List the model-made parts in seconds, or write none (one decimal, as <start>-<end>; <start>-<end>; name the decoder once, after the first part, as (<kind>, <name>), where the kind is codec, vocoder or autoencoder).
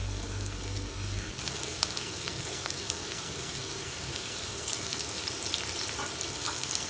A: 0.0-5.2 (codec, SNAC); 6.3-6.9